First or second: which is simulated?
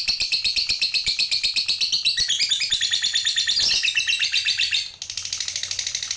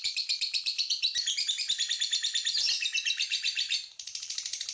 second